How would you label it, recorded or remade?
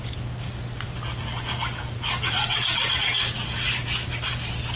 recorded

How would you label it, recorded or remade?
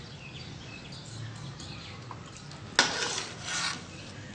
recorded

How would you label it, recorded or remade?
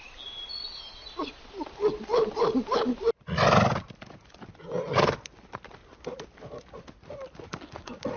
recorded